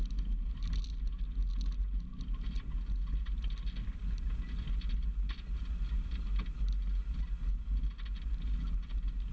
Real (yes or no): yes